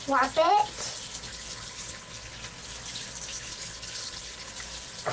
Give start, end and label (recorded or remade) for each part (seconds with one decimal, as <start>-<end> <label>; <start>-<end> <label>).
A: 0.0-1.3 recorded; 1.3-2.3 remade; 2.3-3.3 recorded; 3.3-4.5 remade; 4.5-5.1 recorded